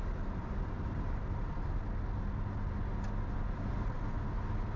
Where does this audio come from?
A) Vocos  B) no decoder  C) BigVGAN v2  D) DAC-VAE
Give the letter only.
B